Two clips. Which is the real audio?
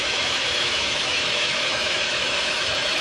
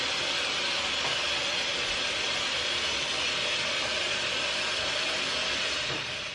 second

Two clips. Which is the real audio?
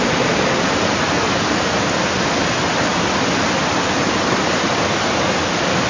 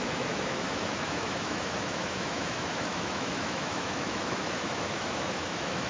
first